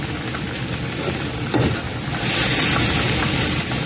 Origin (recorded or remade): recorded